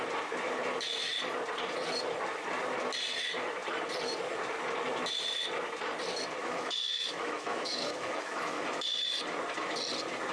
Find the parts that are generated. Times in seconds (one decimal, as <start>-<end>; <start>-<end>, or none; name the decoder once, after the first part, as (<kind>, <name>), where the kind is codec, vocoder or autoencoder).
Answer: 6.4-8.6 (autoencoder, DAC-VAE)